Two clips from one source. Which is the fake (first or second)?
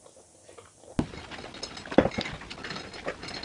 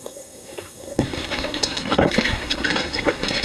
second